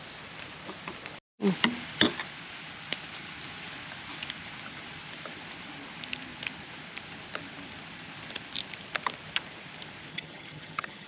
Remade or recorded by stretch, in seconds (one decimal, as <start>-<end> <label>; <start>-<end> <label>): 0.0-10.1 recorded; 10.1-11.1 remade